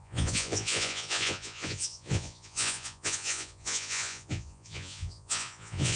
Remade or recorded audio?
remade